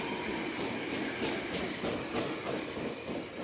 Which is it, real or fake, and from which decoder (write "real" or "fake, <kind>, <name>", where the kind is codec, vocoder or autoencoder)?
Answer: fake, vocoder, BigVGAN v2